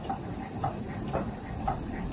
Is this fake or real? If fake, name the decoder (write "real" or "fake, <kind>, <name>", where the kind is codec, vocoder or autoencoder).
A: fake, vocoder, BigVGAN v2